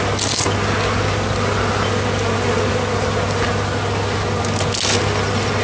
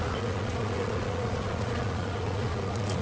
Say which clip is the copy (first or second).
second